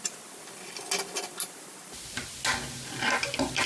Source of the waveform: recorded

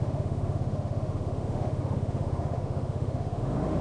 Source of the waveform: remade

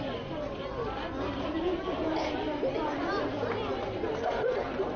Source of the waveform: recorded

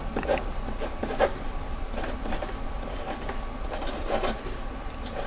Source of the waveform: recorded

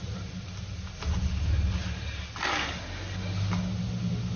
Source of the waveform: recorded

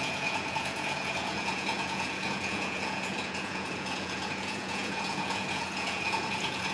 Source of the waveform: remade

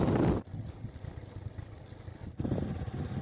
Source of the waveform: recorded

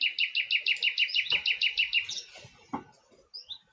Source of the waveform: recorded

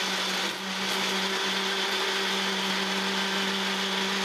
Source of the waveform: recorded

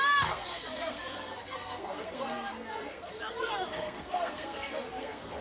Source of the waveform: remade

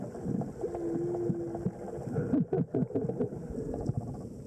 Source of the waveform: recorded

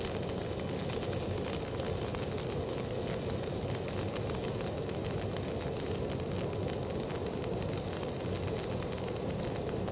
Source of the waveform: recorded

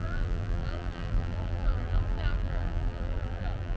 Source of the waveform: remade